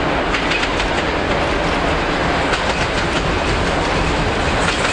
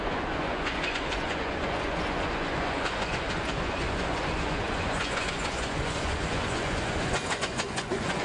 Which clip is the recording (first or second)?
first